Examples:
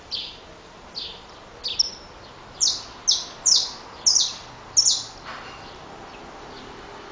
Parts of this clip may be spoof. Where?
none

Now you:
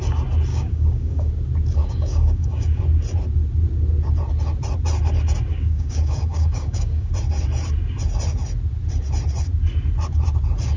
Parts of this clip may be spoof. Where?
0.5-1.3 (codec, DAC); 1.8-2.8; 5.5-7.1